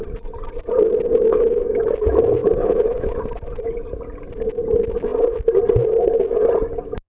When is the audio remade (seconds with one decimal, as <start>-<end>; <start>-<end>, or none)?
1.1-1.9; 2.4-3.1